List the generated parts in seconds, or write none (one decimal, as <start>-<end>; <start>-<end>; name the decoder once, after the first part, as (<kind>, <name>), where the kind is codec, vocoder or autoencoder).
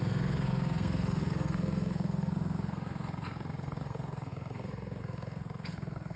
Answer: 0.0-6.2 (codec, SNAC)